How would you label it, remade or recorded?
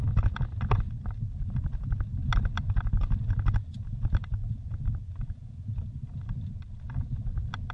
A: recorded